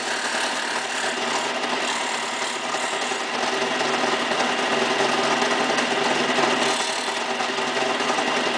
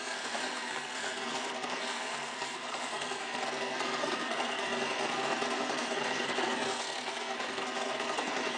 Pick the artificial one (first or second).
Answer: second